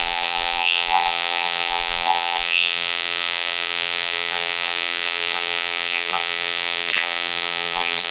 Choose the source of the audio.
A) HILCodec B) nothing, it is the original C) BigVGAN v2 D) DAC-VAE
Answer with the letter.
C